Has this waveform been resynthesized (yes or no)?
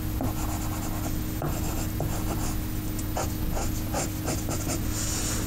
no